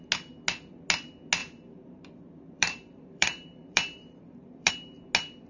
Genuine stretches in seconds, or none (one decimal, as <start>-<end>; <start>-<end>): 0.0-1.4; 4.7-5.5